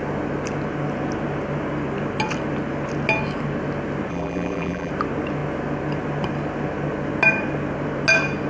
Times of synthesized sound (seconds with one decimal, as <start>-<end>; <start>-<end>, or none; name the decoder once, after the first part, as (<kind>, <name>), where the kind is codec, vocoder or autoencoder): 4.1-4.9 (vocoder, BigVGAN v2)